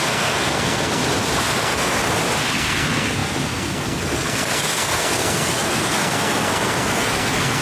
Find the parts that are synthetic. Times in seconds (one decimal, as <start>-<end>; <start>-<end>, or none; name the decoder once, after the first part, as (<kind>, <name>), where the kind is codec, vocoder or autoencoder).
0.0-1.0 (codec, SNAC); 1.6-2.0; 2.5-7.6